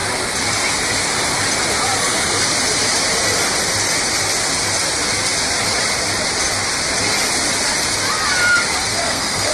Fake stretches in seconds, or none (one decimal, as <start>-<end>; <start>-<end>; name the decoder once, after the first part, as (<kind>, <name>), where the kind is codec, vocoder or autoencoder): 8.9-9.5 (codec, SNAC)